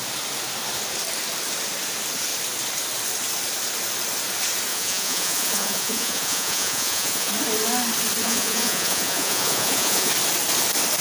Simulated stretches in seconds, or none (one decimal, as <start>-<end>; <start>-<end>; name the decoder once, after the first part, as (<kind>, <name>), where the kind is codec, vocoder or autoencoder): 4.7-7.3 (vocoder, Vocos); 8.2-10.1